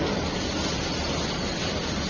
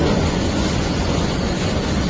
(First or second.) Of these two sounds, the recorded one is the first